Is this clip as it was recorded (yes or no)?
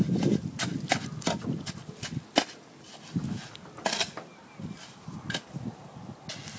yes